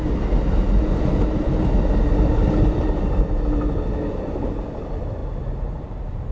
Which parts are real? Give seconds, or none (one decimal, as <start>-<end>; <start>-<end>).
0.0-6.3